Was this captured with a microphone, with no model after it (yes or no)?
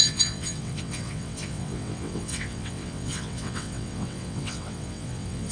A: no